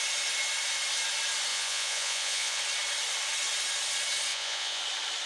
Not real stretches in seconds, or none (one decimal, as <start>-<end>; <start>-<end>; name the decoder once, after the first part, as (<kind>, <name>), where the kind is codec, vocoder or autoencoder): 1.5-2.6 (vocoder, Vocos); 4.3-4.8